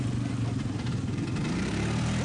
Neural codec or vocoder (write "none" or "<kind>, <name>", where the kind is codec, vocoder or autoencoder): vocoder, BigVGAN v2